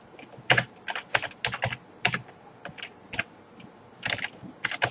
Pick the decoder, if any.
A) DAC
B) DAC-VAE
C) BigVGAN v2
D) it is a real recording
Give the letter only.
D